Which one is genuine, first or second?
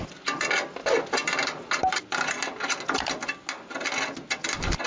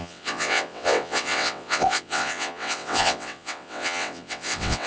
first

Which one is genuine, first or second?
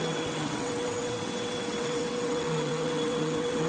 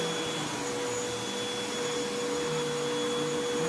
second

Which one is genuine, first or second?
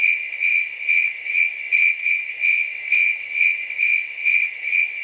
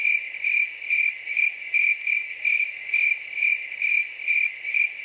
second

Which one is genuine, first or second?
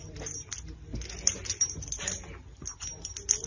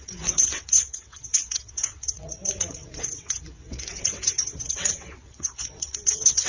first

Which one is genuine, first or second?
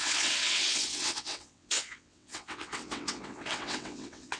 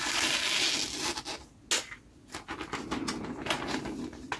second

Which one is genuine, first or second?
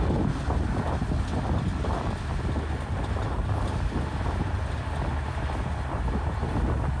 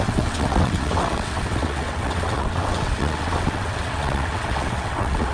first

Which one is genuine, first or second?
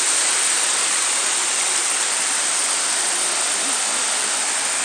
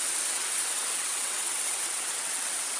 first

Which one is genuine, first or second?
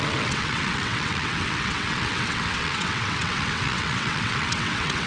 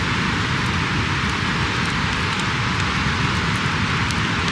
second